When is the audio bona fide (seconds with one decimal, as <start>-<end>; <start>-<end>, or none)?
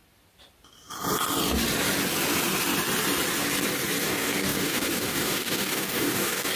0.0-4.0